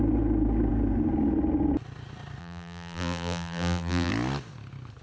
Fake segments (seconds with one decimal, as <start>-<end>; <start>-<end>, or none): 2.4-4.1

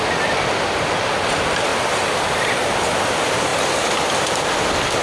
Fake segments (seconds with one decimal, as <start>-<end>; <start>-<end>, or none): none